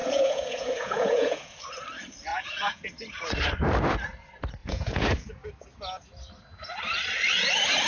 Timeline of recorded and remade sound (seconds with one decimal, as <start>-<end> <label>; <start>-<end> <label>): 0.0-1.6 remade; 1.6-2.3 recorded; 2.3-2.9 remade; 2.9-4.6 recorded; 4.6-5.3 remade; 5.3-7.9 recorded